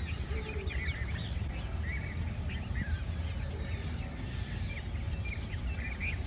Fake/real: real